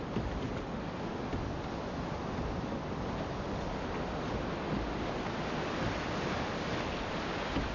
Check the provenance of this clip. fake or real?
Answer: real